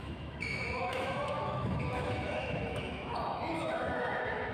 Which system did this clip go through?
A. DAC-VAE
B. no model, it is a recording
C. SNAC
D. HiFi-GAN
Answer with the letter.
A